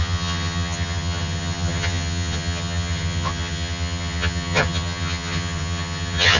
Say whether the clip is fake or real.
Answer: fake